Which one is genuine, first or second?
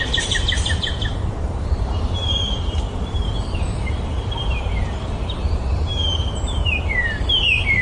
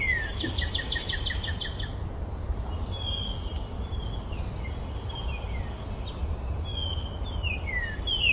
second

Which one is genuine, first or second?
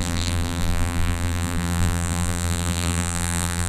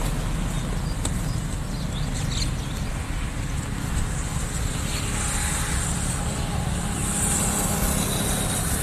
second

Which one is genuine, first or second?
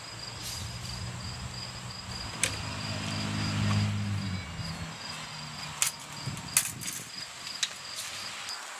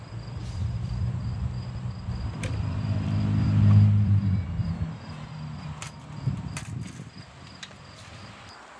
first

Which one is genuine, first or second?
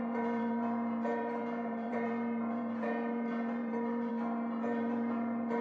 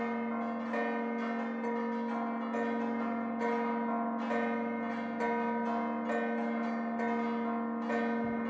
second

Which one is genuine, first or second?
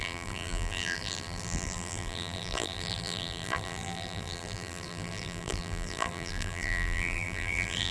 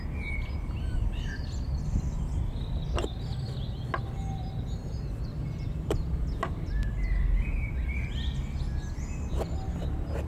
second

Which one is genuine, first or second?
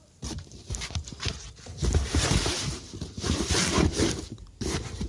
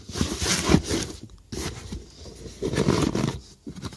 second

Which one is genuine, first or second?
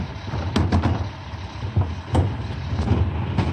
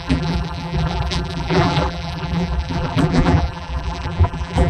first